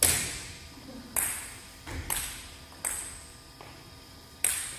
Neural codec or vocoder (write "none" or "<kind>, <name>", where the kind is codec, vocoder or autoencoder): none